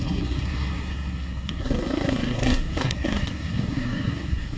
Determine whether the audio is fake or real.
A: fake